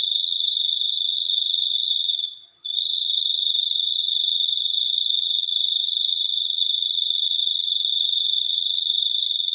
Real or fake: fake